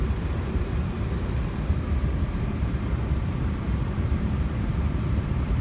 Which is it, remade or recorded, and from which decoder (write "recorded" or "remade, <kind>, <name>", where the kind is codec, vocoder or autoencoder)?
remade, vocoder, BigVGAN v2